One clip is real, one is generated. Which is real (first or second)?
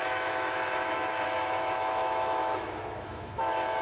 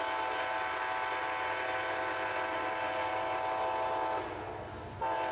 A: second